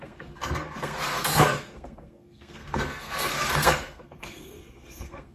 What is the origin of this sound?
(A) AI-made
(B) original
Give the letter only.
A